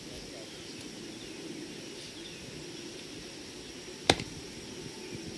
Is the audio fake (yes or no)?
no